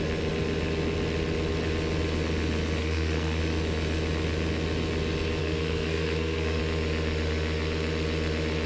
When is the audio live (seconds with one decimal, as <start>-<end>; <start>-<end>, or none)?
0.0-2.8; 3.4-5.4; 6.6-8.7